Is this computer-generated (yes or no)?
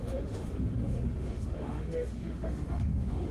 yes